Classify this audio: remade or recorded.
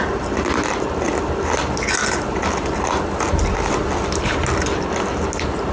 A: recorded